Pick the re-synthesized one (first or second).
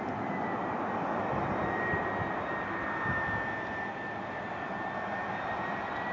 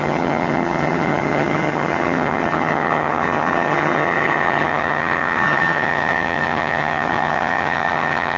second